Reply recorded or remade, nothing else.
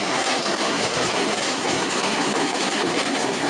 remade